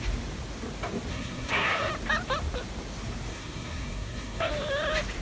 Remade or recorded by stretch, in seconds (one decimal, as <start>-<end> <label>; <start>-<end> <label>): 0.0-1.1 recorded; 1.1-1.9 remade; 1.9-3.3 recorded; 3.3-4.5 remade; 4.5-5.2 recorded